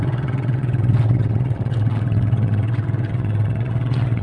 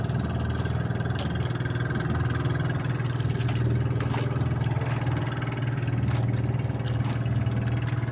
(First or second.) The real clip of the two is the second